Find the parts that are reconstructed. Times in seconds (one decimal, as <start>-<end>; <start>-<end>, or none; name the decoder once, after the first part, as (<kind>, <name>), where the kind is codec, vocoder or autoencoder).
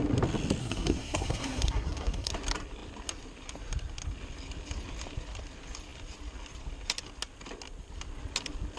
0.6-2.3 (codec, SNAC)